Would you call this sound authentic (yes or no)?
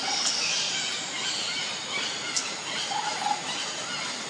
yes